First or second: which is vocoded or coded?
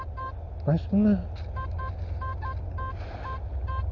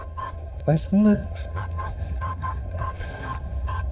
second